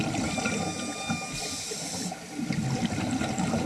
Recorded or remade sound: recorded